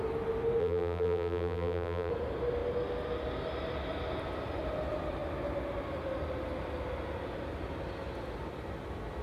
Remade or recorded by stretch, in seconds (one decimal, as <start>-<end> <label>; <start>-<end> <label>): 0.0-0.6 recorded; 0.6-2.1 remade; 2.1-9.2 recorded